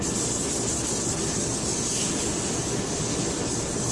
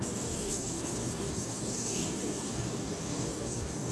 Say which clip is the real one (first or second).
first